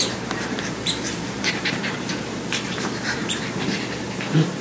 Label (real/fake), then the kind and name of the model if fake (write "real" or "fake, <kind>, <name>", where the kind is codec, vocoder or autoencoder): fake, vocoder, BigVGAN v2